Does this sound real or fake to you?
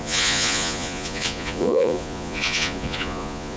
fake